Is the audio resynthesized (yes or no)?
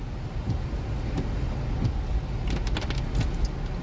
no